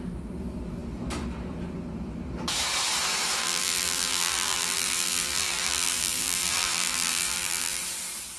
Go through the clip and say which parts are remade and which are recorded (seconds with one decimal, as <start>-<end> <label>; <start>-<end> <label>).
0.0-3.4 recorded; 3.4-7.8 remade; 7.8-8.4 recorded